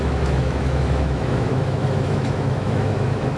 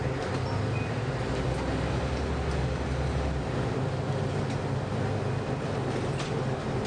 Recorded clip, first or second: second